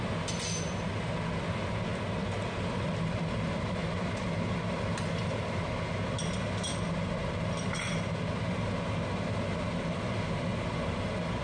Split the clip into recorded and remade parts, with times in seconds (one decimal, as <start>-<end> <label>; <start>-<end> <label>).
0.0-11.4 recorded